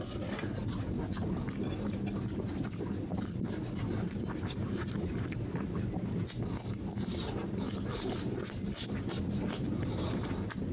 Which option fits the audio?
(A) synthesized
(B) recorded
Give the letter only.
B